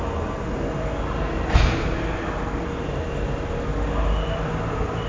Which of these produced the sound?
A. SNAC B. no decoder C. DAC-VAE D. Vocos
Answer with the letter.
B